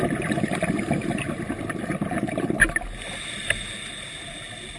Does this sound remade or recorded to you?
recorded